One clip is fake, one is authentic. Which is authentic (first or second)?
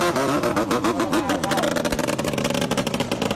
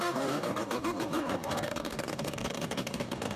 first